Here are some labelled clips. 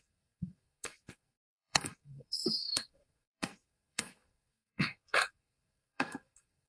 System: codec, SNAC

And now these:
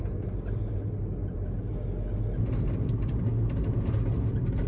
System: none